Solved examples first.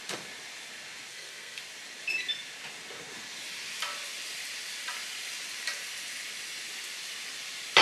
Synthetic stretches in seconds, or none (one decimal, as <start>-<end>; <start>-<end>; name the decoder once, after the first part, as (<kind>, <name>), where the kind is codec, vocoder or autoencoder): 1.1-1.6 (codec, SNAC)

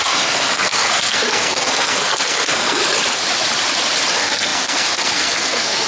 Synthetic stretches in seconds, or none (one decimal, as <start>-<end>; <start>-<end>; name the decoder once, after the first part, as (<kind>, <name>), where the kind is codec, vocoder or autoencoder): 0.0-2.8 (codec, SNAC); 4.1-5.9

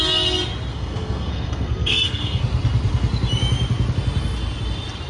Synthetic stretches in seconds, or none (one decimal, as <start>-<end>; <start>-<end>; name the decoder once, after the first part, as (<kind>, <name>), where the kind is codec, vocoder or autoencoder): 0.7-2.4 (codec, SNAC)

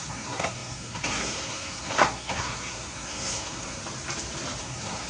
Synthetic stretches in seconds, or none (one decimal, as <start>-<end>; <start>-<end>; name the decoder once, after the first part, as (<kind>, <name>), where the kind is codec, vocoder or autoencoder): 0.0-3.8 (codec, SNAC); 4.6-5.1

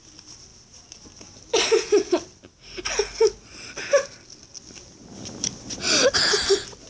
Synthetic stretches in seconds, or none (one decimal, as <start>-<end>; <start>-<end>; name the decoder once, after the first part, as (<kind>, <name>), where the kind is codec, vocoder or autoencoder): none

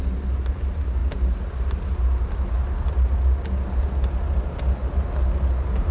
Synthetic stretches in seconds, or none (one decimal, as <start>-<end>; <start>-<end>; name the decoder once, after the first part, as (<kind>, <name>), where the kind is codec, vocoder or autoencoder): none